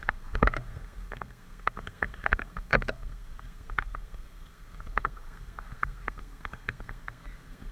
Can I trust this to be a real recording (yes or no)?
no